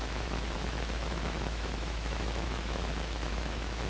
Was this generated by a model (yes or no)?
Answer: yes